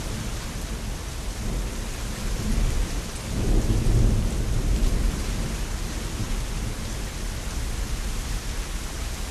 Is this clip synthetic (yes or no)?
no